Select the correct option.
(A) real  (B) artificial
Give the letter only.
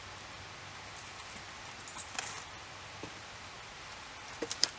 A